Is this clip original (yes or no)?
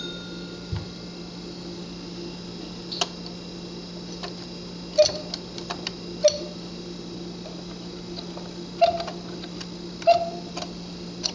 yes